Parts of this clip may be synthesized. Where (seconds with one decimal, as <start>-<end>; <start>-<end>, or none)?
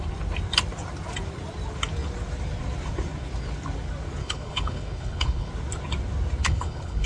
4.2-5.5; 6.4-7.1